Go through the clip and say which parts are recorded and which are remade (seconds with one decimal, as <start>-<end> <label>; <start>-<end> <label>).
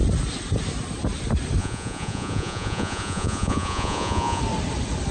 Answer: 0.0-1.6 recorded; 1.6-4.4 remade; 4.4-5.1 recorded